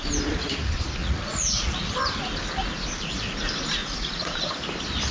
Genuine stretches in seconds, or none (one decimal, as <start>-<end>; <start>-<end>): 0.0-1.0; 1.9-3.8; 4.5-5.1